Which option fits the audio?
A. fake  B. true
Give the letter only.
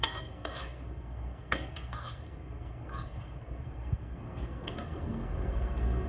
A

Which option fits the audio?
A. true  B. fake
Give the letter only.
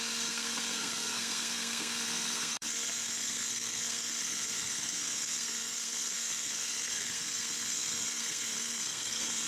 B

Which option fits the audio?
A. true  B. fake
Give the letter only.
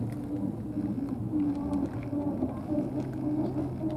A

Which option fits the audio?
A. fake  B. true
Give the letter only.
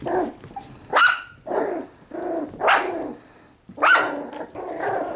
B